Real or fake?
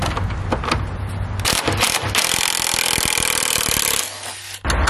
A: real